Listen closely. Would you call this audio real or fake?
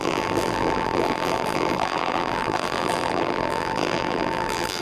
fake